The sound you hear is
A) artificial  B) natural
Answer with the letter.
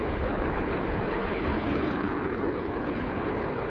A